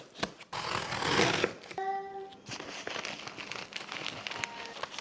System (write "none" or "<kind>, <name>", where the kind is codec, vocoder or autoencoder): none